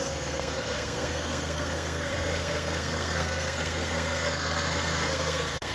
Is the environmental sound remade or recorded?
remade